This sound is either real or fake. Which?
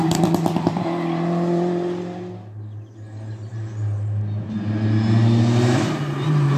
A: real